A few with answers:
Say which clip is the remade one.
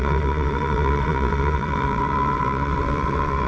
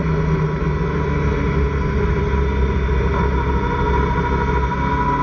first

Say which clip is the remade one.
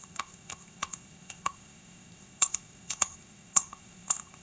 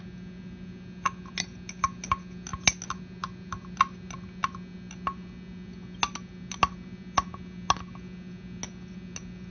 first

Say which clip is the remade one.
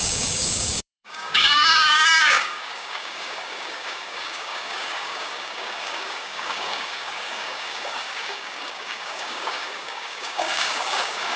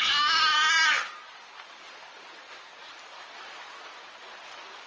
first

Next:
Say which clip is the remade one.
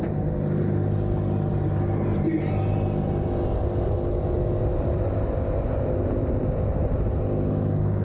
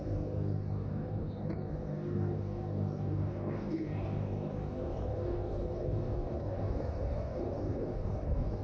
second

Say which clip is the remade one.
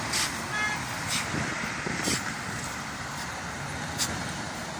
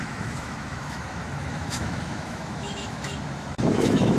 second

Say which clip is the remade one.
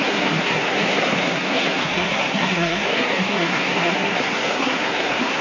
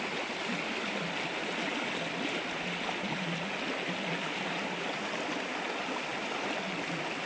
first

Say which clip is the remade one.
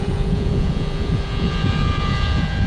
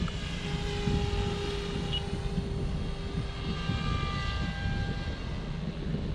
first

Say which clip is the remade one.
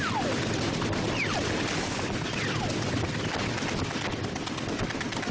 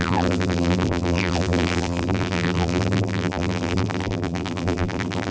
second